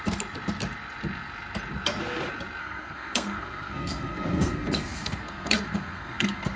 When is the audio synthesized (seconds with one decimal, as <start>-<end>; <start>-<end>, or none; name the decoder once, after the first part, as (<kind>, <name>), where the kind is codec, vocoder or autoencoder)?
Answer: 2.6-6.6 (codec, SNAC)